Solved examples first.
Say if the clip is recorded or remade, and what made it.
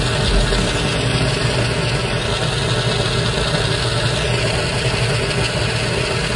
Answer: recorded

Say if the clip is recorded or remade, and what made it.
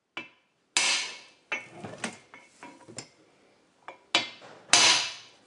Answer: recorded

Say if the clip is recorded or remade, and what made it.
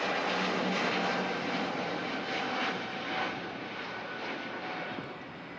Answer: recorded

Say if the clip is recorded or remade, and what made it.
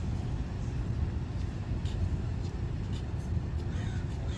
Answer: recorded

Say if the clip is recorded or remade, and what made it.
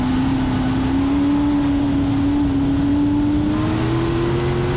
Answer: recorded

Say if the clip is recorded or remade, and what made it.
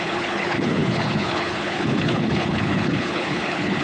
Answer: remade, codec, HILCodec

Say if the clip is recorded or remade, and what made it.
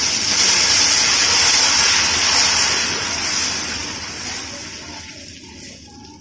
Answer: recorded